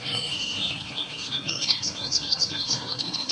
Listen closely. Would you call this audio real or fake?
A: fake